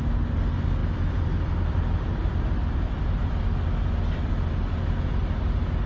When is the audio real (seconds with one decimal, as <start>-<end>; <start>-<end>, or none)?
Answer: 0.0-0.8; 4.3-5.9